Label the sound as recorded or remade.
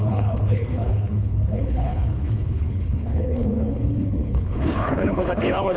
remade